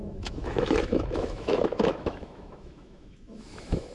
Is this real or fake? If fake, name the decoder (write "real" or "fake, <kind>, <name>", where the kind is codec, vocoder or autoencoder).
fake, autoencoder, DAC-VAE